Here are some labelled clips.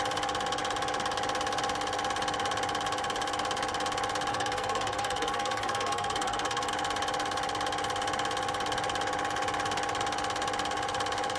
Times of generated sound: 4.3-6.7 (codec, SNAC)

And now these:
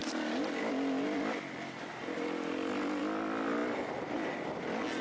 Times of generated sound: none

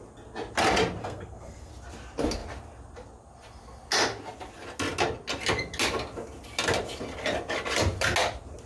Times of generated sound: 1.0-1.7 (codec, SNAC)